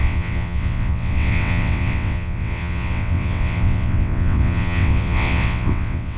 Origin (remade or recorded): remade